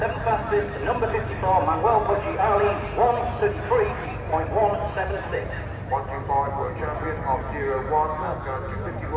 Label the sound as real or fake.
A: real